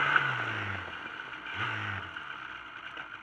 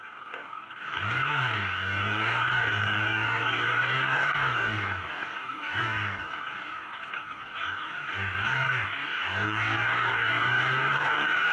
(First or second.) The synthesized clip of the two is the second